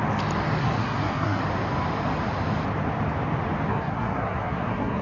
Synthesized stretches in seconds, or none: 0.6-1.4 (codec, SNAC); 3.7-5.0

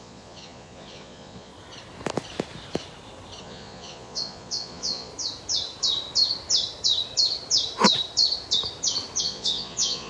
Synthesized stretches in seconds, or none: 0.0-1.5 (vocoder, Vocos); 3.4-5.1; 9.2-10.1

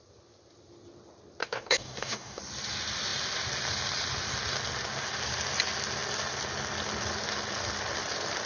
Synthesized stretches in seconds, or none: 1.4-2.4 (codec, DAC)